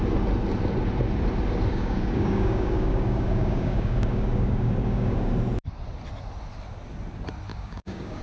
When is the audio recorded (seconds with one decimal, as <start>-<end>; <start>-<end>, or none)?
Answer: 0.0-1.7; 5.3-7.5

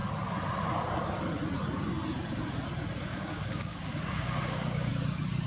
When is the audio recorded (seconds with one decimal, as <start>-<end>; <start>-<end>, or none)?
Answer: 0.0-3.1; 4.9-5.5

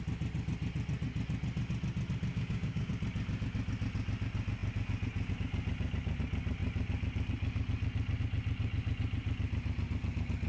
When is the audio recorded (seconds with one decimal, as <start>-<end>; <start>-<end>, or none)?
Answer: 0.0-2.3; 2.9-10.5